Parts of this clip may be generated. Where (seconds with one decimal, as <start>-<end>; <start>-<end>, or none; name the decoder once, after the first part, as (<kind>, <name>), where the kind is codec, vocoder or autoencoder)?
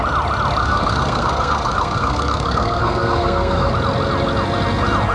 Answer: 0.6-3.7 (codec, SNAC)